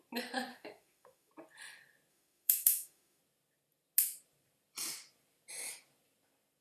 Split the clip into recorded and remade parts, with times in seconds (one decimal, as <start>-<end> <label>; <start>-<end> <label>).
0.0-0.5 recorded; 0.5-1.3 remade; 1.3-2.1 recorded; 2.1-3.2 remade; 3.2-6.6 recorded